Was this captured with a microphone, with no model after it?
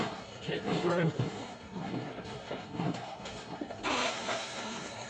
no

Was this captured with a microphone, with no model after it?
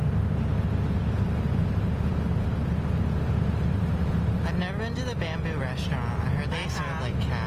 yes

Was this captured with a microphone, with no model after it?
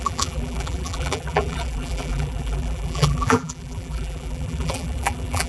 no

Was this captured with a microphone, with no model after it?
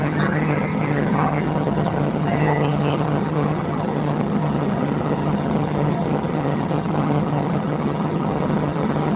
no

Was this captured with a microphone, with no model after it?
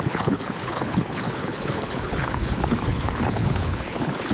no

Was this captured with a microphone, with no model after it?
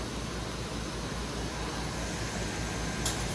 yes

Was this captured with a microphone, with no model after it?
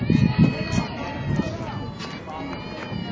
yes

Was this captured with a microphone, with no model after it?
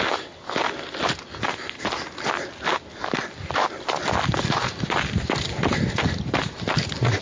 yes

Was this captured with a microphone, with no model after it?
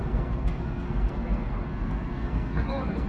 no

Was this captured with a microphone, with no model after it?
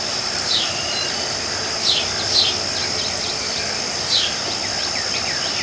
yes